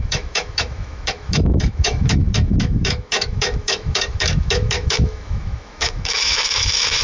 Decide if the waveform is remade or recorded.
remade